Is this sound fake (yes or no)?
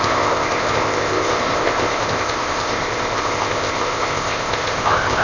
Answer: yes